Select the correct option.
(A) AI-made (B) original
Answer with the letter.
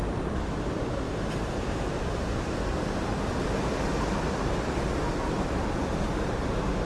B